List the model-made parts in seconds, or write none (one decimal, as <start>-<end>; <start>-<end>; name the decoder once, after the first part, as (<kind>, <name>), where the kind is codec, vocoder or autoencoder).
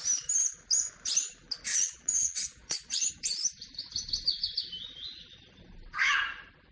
1.7-3.1 (vocoder, Vocos)